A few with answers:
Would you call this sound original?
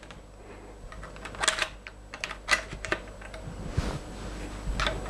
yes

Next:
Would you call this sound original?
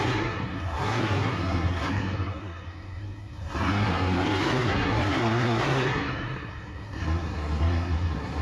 no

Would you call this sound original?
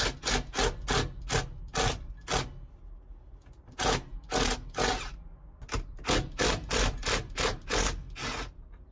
yes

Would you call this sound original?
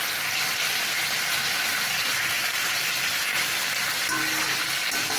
yes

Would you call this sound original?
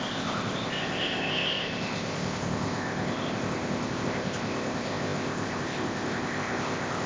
no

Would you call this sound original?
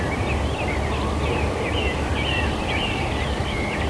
yes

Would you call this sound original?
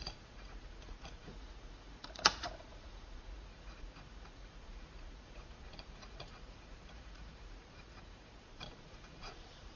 no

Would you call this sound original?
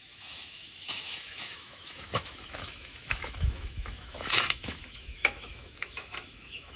no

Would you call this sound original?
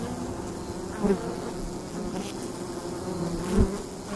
yes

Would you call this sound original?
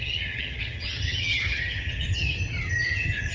no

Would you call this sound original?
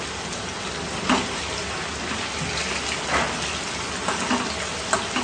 yes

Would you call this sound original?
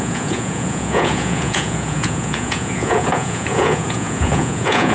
no